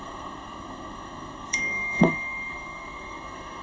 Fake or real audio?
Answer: fake